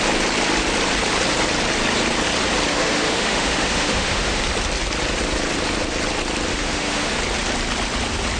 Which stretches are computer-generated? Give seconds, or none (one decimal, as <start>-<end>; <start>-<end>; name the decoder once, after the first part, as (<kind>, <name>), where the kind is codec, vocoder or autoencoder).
2.7-4.4 (autoencoder, DAC-VAE); 6.5-7.1